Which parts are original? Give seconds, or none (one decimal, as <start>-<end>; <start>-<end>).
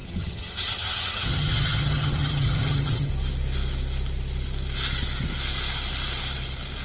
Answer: 3.1-6.8